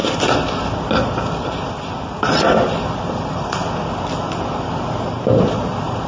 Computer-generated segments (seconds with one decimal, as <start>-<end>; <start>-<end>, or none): 1.9-3.6; 4.9-6.1